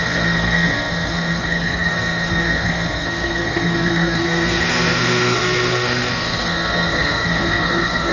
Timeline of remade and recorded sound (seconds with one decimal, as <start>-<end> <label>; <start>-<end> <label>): 0.0-8.1 remade